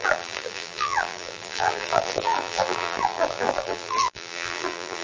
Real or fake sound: fake